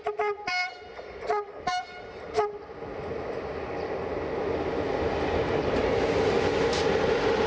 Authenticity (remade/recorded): recorded